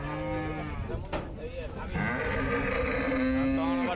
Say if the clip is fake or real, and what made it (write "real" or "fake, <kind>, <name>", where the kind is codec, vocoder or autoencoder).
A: real